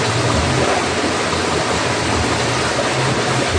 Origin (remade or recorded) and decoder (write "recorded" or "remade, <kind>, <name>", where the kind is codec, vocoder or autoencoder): recorded